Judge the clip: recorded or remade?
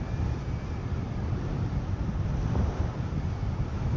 recorded